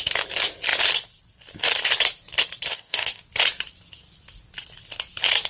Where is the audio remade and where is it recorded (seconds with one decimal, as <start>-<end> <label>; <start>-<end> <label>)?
0.0-2.7 recorded; 2.7-3.2 remade; 3.2-5.5 recorded